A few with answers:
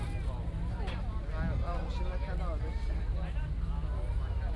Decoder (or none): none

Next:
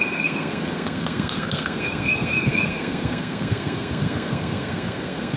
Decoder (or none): codec, SNAC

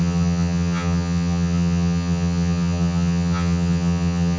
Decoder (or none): vocoder, HiFi-GAN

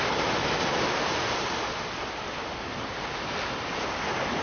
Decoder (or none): none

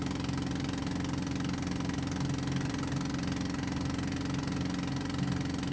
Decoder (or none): none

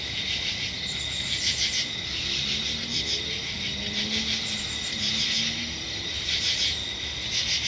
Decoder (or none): none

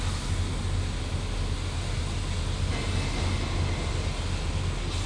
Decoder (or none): none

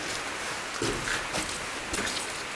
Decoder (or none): none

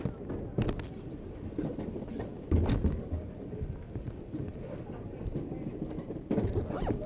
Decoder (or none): none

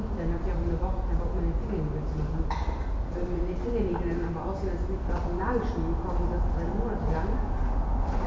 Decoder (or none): none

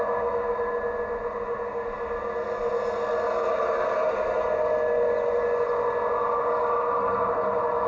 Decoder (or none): none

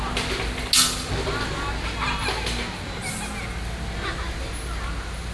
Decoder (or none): none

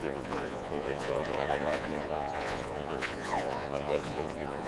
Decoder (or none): vocoder, Vocos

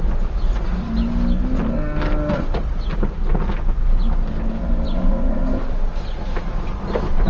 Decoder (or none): none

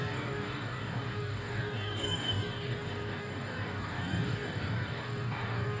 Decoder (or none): codec, DAC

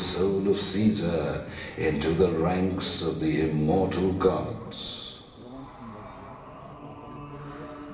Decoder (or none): none